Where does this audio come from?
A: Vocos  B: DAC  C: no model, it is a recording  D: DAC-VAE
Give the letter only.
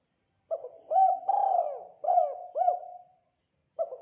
C